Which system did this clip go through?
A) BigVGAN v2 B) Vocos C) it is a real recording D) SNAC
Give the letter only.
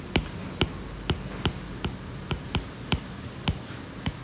C